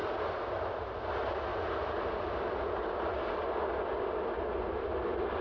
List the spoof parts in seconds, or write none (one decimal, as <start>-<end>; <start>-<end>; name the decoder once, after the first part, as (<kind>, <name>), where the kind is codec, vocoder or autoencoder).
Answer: none